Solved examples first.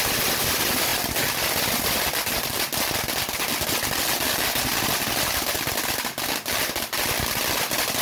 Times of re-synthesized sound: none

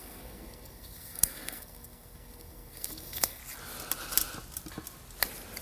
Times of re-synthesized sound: 0.0-3.4 (codec, SNAC)

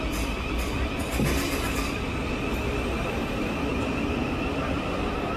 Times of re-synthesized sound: none

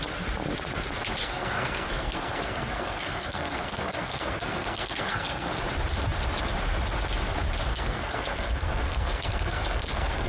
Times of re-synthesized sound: 1.2-5.6 (codec, SNAC); 7.7-10.3

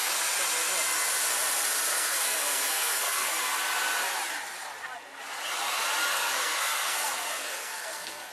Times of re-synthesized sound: 1.9-3.4 (codec, SNAC); 6.1-8.3

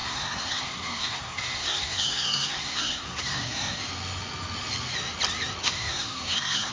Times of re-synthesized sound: 0.0-3.8 (codec, SNAC); 5.6-6.7